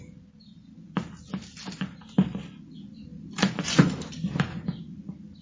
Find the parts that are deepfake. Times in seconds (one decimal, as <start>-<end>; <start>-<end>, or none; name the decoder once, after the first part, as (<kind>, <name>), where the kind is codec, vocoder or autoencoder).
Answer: none